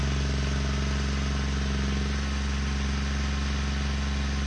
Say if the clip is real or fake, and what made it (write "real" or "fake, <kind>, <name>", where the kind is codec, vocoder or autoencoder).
real